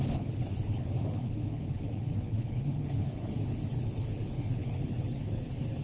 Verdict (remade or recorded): remade